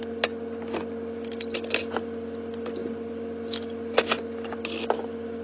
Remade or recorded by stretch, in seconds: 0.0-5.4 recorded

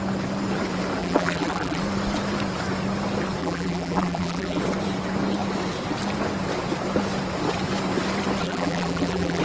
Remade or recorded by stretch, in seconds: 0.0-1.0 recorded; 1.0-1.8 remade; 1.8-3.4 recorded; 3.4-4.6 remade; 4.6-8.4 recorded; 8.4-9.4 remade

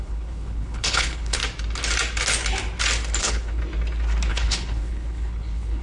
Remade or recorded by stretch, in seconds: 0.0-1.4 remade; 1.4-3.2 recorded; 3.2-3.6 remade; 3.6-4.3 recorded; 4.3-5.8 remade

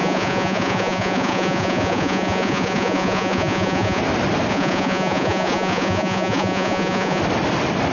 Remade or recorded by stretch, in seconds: 0.0-4.0 remade; 4.0-4.5 recorded; 4.5-7.2 remade; 7.2-7.9 recorded

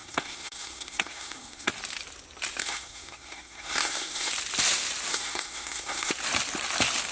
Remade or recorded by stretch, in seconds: 0.0-1.7 remade; 1.7-2.6 recorded; 2.6-4.3 remade; 4.3-5.1 recorded; 5.1-6.1 remade; 6.1-7.1 recorded

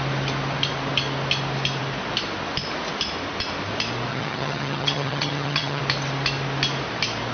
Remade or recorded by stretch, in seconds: 0.0-4.1 recorded; 4.1-5.8 remade; 5.8-7.3 recorded

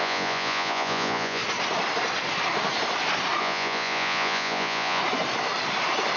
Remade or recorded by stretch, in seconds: 0.0-1.4 remade; 1.4-3.4 recorded; 3.4-5.0 remade; 5.0-6.2 recorded

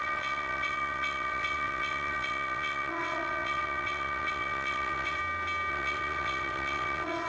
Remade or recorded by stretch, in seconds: 0.0-5.2 remade; 5.2-5.7 recorded; 5.7-7.3 remade